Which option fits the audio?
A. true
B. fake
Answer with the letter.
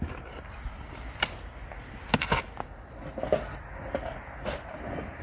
A